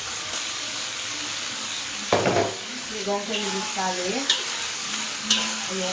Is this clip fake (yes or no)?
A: yes